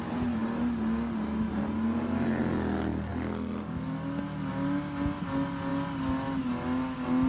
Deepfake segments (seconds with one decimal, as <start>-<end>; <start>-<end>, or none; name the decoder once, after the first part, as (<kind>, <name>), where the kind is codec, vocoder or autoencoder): none